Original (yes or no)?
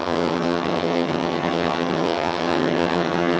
no